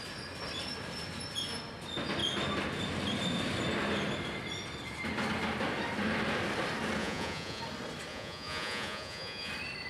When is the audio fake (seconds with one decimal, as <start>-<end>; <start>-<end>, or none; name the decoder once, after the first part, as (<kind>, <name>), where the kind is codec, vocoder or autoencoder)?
7.0-7.6 (vocoder, Vocos); 8.1-9.5